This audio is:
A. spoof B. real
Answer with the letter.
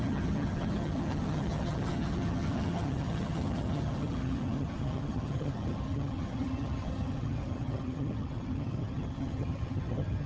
A